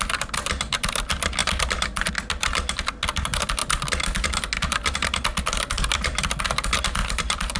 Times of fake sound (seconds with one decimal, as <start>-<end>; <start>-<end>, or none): 7.0-7.6